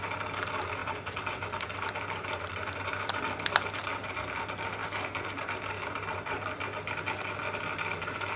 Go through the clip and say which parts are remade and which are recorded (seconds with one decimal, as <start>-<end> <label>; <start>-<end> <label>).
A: 0.0-0.8 recorded; 0.8-3.2 remade; 3.2-4.8 recorded; 4.8-7.0 remade; 7.0-8.4 recorded